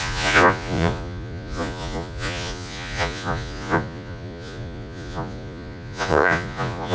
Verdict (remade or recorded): remade